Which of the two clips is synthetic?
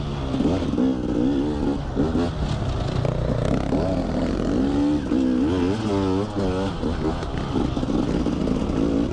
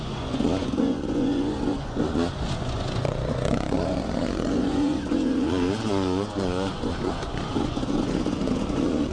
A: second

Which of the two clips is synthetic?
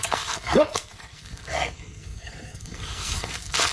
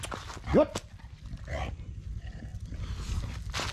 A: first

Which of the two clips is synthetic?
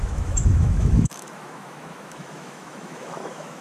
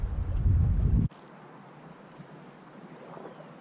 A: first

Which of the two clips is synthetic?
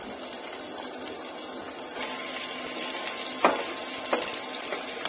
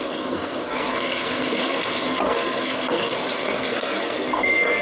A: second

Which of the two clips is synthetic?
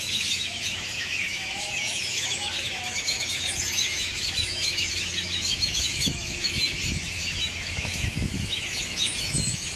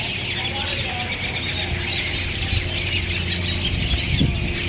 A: first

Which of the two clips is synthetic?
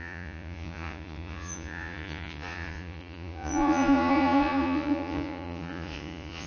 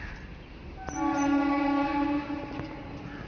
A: first